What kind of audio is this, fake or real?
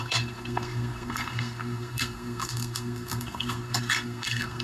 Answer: fake